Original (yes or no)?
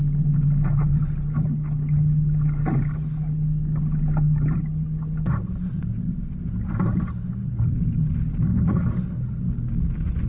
yes